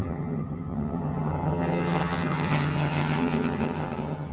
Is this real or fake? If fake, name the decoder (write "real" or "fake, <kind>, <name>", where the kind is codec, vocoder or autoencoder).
fake, vocoder, HiFi-GAN